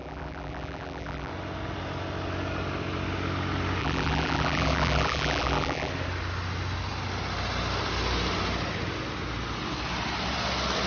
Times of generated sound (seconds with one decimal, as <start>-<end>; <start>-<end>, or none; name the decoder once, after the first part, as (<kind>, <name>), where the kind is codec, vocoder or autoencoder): 0.0-1.3 (vocoder, BigVGAN v2); 3.8-5.9